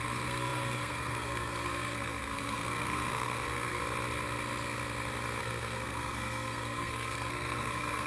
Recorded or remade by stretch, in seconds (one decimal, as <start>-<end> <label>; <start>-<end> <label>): 0.0-3.8 remade; 3.8-5.4 recorded; 5.4-8.1 remade